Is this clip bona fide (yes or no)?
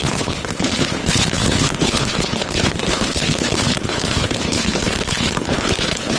no